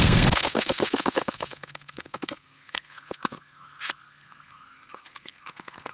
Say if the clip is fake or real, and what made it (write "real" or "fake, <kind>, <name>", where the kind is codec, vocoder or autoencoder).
fake, codec, SNAC